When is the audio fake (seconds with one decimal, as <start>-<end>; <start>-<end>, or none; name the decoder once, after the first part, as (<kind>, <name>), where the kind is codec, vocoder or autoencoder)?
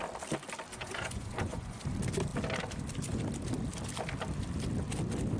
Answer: 0.7-1.8 (vocoder, Vocos)